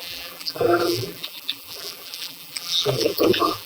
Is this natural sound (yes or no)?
no